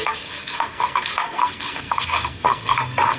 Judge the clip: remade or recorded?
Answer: remade